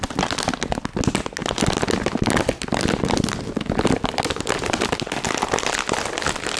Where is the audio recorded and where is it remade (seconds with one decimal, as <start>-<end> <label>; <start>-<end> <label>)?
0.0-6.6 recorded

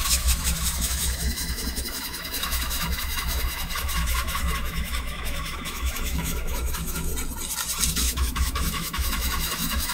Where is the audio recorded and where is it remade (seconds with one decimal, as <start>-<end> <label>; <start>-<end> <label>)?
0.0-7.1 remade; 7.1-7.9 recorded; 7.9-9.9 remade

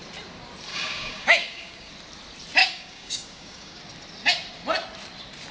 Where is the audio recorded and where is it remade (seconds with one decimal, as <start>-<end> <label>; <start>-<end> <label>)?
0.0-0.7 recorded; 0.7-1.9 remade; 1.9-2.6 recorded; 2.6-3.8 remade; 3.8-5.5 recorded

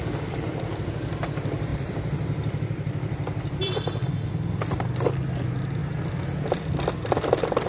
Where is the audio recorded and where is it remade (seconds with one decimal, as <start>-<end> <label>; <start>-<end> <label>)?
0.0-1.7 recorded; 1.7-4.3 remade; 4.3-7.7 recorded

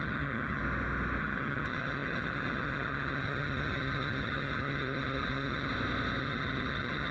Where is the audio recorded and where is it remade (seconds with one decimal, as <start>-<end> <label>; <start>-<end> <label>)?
0.0-0.6 remade; 0.6-1.2 recorded; 1.2-5.7 remade; 5.7-6.2 recorded; 6.2-7.1 remade